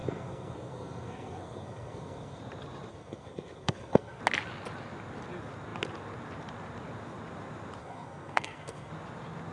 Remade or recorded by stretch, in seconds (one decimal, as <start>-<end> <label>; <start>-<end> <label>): 0.0-2.4 remade; 2.4-2.9 recorded; 2.9-4.2 remade; 4.2-7.8 recorded; 7.8-8.9 remade; 8.9-9.5 recorded